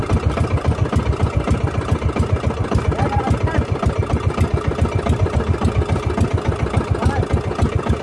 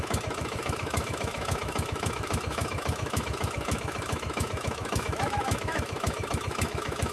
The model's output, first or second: second